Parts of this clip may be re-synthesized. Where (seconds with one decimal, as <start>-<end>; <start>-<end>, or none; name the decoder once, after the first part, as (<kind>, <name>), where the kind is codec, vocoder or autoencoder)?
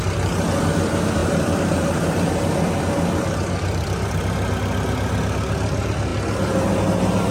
1.2-4.2 (vocoder, BigVGAN v2)